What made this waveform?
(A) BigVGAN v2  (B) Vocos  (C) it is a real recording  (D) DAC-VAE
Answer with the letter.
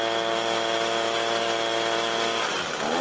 A